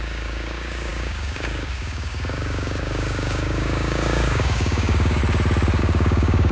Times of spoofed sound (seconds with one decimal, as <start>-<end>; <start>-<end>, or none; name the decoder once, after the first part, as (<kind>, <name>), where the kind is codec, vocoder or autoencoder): 0.0-5.2 (codec, DAC); 5.8-6.5